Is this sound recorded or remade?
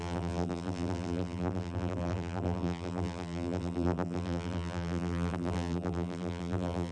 remade